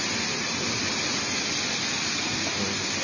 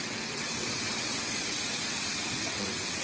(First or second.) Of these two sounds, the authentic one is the first